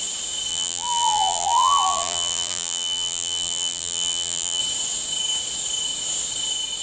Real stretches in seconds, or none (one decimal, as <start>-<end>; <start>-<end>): 0.0-0.5; 4.6-6.8